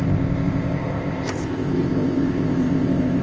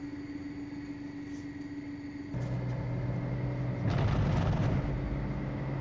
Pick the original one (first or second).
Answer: second